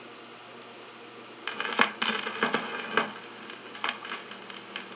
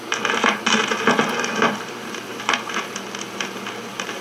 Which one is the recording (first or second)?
first